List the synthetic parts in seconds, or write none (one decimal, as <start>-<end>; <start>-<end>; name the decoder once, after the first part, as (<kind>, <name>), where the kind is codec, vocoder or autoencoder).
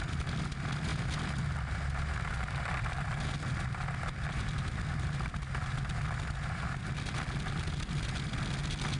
none